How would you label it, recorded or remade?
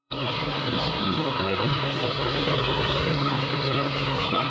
remade